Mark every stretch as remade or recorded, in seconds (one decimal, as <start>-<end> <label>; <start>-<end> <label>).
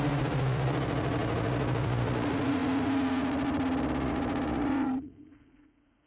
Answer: 0.0-6.1 remade